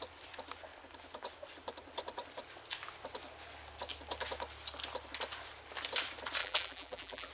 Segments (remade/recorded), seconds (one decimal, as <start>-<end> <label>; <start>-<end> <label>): 0.0-6.4 recorded; 6.4-7.3 remade